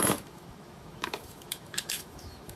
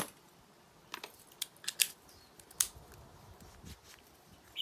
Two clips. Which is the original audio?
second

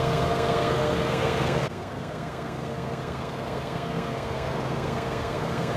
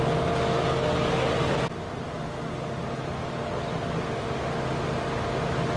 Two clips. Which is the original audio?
second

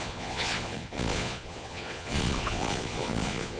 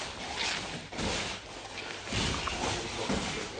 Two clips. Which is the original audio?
second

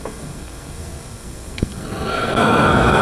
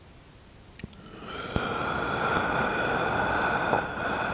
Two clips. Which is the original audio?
second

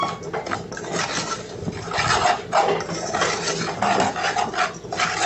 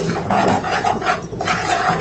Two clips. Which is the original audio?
first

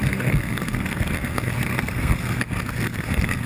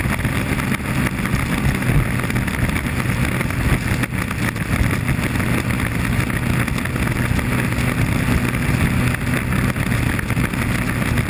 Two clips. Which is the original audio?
second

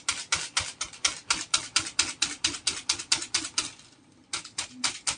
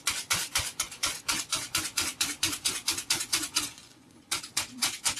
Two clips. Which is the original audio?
first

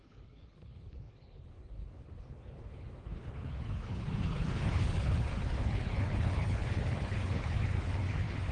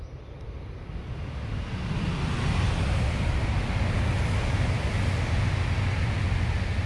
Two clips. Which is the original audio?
second